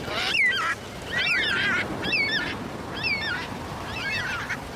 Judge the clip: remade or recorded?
recorded